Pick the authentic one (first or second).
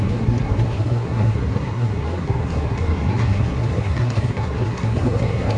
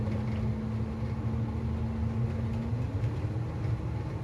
second